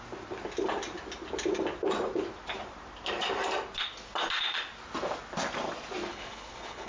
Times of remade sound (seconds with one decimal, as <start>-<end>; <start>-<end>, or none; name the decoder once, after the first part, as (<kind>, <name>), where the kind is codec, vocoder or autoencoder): 6.1-6.9 (codec, HILCodec)